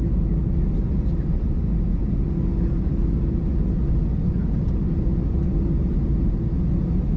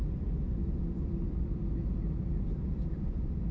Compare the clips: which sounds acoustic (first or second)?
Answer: first